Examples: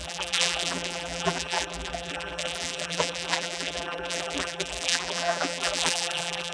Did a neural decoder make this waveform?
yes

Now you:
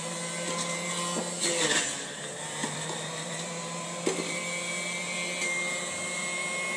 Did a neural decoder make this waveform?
yes